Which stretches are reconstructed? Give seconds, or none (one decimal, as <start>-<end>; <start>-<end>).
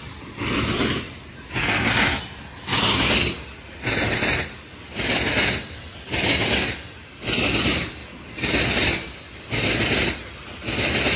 1.6-2.2